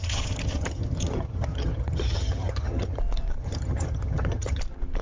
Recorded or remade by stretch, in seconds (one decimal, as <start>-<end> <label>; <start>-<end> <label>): 0.0-3.0 remade; 3.0-3.4 recorded; 3.4-4.6 remade; 4.6-5.0 recorded